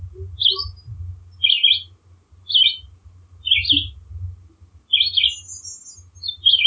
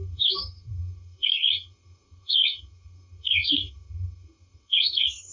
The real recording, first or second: first